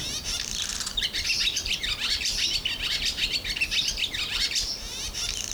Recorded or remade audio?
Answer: remade